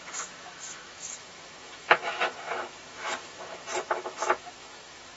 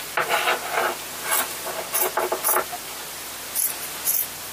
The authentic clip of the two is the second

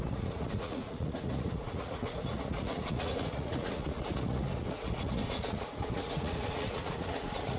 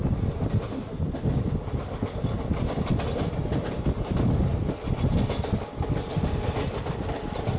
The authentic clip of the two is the second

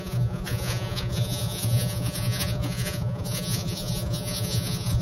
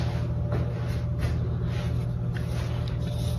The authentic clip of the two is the second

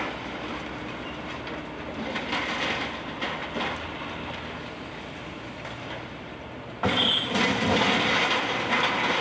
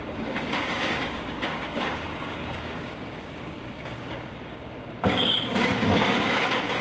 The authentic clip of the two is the first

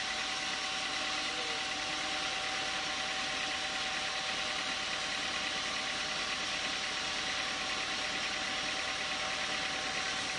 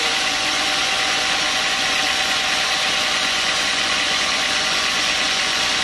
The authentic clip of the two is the first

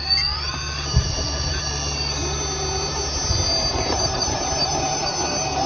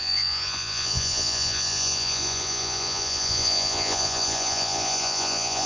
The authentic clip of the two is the first